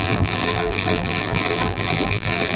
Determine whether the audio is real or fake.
fake